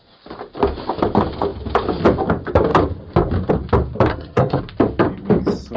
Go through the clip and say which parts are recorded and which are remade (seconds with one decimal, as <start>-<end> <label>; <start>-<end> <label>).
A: 0.0-4.1 recorded; 4.1-4.6 remade; 4.6-5.8 recorded